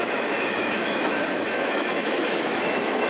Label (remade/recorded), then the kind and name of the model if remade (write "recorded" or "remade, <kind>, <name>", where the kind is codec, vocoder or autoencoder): remade, autoencoder, DAC-VAE